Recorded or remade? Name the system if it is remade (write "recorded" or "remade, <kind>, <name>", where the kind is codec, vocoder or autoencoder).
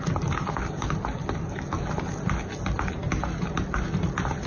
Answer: recorded